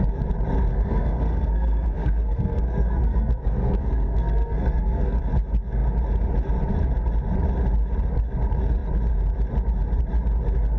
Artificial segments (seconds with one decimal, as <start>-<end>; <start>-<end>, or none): 0.7-5.2